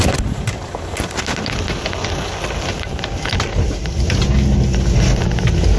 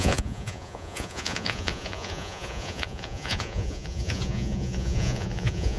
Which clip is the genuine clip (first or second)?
first